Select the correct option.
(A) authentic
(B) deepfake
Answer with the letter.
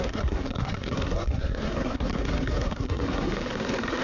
B